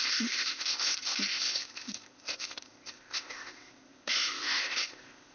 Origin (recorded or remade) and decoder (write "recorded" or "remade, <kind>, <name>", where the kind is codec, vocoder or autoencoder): remade, codec, ZipCodec